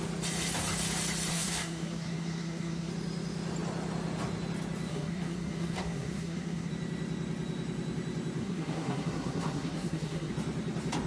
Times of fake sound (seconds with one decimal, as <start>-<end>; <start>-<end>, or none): 1.3-2.9; 4.9-6.7; 8.4-10.3